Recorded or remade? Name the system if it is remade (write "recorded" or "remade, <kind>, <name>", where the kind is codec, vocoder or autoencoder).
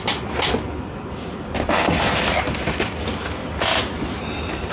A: recorded